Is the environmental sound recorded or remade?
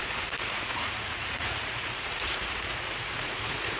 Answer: remade